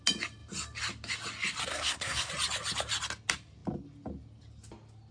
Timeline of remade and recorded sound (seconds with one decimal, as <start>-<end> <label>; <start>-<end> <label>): 0.0-1.7 recorded; 1.7-2.3 remade; 2.3-5.1 recorded